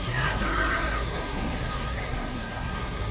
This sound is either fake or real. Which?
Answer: fake